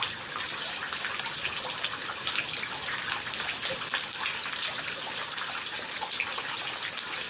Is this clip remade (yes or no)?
no